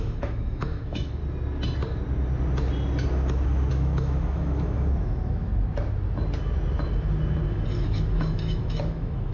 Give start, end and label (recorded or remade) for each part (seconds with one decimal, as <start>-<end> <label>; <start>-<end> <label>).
0.0-1.2 remade; 1.2-3.7 recorded; 3.7-5.5 remade; 5.5-7.7 recorded; 7.7-9.3 remade